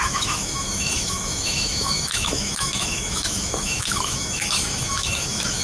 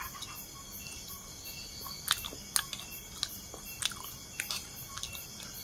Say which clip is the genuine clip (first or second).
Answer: second